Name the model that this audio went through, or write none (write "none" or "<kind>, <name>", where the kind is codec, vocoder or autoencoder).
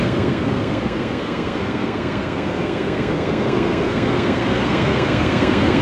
codec, SNAC